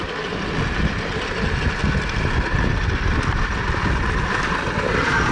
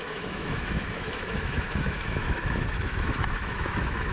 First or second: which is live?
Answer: first